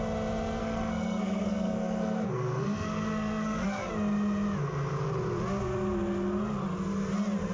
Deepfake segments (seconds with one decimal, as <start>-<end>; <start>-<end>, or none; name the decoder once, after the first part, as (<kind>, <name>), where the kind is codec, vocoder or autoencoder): 0.6-3.9 (codec, SNAC)